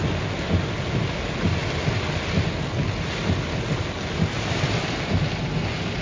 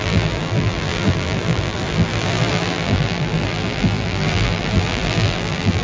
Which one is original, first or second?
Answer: first